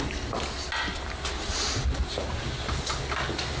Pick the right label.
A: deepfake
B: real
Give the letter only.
B